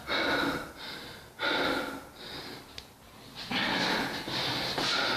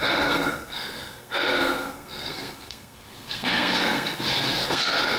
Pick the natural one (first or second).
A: first